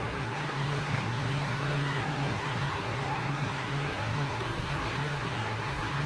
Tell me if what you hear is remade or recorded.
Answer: remade